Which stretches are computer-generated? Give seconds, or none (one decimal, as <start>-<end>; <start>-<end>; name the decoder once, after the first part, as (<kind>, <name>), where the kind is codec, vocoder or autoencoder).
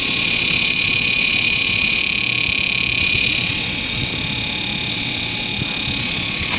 0.0-2.0 (vocoder, WaveNeXt); 3.0-4.1; 4.9-5.5; 6.0-6.6